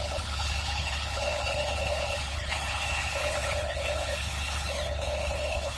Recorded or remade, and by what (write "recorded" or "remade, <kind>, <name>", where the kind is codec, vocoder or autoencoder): remade, codec, HILCodec